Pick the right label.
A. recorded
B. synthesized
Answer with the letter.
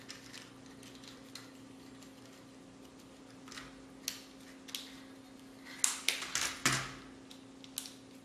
A